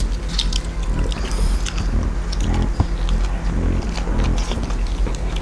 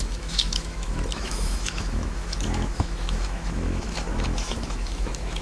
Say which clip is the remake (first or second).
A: second